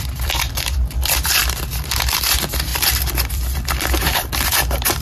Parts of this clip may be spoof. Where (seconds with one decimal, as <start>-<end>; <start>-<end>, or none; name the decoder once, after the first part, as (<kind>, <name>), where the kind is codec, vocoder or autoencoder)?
0.0-5.0 (vocoder, BigVGAN v2)